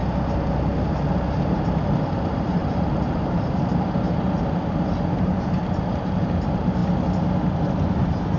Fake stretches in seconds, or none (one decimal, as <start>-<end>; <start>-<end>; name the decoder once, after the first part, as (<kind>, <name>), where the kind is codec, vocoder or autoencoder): 0.9-6.8 (vocoder, BigVGAN v2); 7.9-8.4